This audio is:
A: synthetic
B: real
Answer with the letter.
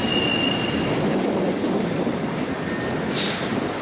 B